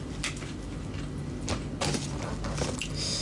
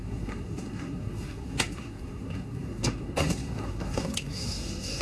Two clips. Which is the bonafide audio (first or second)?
first